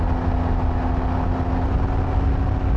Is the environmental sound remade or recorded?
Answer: recorded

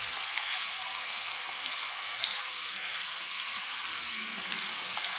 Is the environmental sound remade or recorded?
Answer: remade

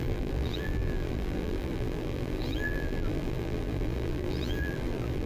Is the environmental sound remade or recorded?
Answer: remade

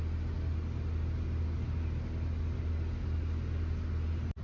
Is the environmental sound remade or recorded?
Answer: recorded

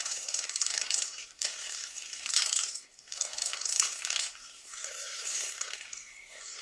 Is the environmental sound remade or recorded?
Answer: remade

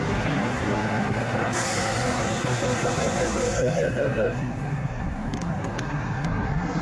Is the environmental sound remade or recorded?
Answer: remade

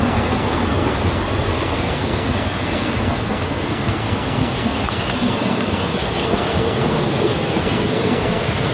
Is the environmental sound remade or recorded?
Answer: remade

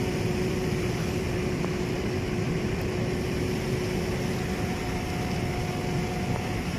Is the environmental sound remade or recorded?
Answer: recorded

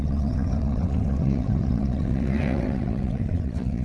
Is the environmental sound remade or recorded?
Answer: remade